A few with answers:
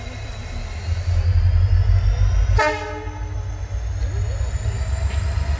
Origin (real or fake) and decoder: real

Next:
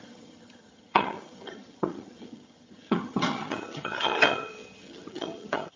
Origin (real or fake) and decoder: fake, vocoder, HiFi-GAN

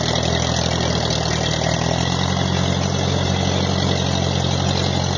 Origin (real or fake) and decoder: real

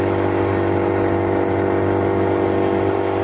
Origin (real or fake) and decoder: real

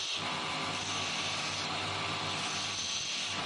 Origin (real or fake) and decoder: fake, vocoder, BigVGAN v2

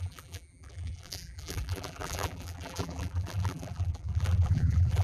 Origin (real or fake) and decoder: fake, vocoder, BigVGAN v2